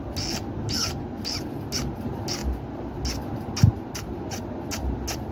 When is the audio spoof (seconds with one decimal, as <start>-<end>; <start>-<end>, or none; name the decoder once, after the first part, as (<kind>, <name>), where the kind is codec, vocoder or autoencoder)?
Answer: none